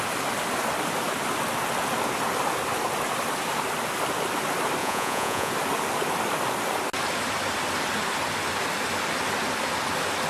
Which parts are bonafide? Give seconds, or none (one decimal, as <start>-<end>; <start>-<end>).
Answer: 0.0-4.8; 5.5-10.3